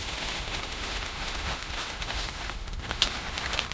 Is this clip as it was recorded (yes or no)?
no